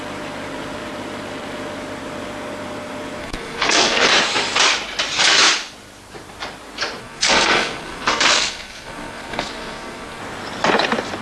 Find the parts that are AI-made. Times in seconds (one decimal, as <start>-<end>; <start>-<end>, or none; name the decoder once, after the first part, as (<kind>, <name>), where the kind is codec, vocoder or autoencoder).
3.2-4.1 (codec, SNAC); 7.0-10.2